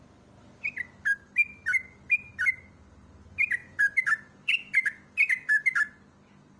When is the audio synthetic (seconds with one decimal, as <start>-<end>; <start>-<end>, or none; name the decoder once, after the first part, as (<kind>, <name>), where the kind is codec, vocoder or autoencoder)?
2.3-2.9 (vocoder, BigVGAN v2); 3.6-4.5